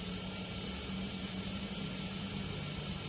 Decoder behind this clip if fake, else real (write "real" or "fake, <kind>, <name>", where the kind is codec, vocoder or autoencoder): real